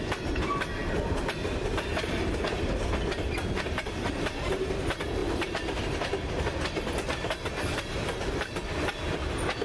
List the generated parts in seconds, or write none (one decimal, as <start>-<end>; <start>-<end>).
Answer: 0.8-3.3; 5.2-6.1